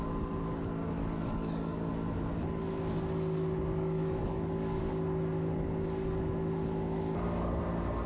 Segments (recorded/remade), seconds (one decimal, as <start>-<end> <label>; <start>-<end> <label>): 0.0-1.0 recorded; 1.0-1.9 remade; 1.9-3.7 recorded; 3.7-5.0 remade; 5.0-8.1 recorded